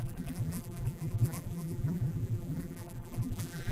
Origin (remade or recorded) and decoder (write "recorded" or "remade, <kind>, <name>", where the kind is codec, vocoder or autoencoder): remade, vocoder, BigVGAN v2